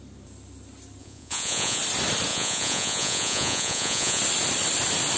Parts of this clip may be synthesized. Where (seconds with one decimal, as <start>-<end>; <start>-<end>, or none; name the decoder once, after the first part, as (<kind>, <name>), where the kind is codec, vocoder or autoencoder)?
1.0-1.8 (vocoder, Vocos); 2.3-4.2